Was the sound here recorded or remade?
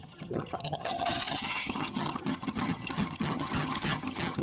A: remade